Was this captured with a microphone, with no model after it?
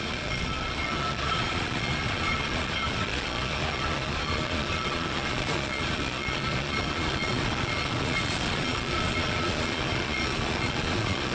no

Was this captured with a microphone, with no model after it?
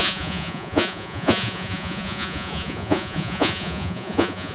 no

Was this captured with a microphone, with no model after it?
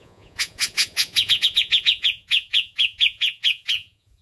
no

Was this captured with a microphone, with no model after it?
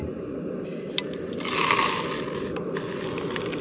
yes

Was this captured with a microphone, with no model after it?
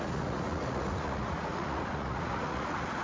no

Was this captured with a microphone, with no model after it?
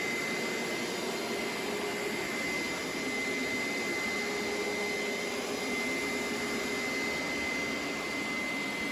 yes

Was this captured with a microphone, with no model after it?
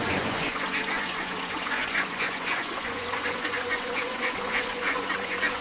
no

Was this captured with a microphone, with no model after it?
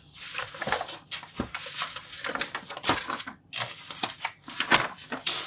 yes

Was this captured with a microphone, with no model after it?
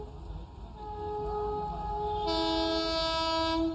yes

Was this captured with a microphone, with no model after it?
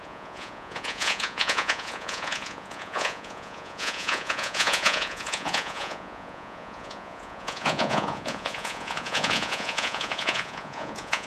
no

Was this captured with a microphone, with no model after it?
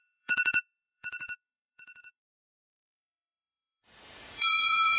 no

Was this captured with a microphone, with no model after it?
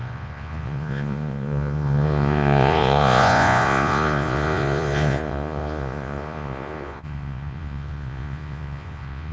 no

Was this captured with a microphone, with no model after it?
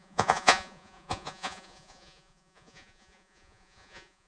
no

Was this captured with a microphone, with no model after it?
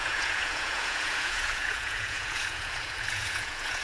no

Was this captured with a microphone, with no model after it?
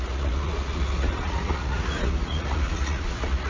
no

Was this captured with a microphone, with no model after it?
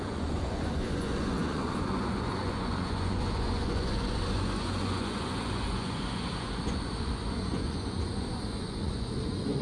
no